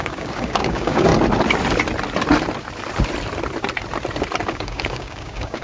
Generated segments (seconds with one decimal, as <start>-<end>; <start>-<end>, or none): 0.0-1.1; 4.5-5.6